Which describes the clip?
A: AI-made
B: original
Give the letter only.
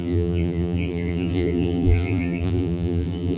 A